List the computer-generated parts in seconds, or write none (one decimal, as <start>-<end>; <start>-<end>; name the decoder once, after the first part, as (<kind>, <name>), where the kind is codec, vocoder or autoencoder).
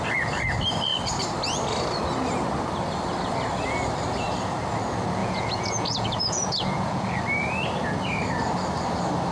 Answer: 5.2-7.2 (vocoder, Vocos)